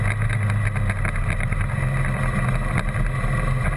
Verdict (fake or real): real